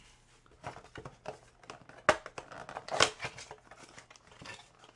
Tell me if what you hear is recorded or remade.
recorded